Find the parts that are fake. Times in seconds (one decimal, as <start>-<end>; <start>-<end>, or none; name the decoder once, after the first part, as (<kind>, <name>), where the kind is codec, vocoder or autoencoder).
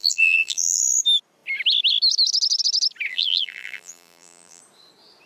0.0-0.8 (vocoder, BigVGAN v2); 3.1-4.6